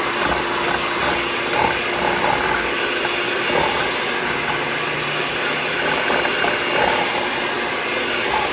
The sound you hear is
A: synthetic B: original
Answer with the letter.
B